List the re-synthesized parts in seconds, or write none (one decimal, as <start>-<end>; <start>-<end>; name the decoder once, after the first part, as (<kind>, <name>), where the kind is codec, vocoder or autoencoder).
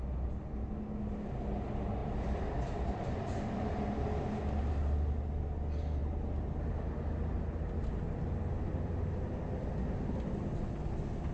2.0-4.3 (vocoder, BigVGAN v2); 6.0-6.7